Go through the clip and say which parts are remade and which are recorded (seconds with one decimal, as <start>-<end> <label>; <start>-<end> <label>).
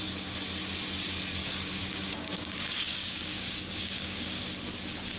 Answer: 0.0-1.4 recorded; 1.4-4.5 remade; 4.5-5.2 recorded